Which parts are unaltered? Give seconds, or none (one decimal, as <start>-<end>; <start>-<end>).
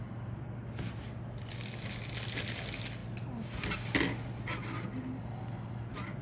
0.0-6.2